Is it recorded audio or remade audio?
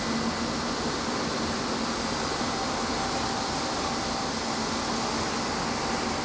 recorded